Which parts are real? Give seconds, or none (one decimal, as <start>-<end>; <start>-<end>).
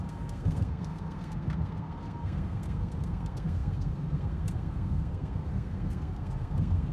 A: none